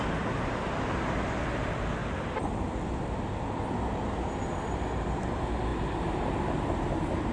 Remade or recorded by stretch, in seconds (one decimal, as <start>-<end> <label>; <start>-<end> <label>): 0.0-7.3 recorded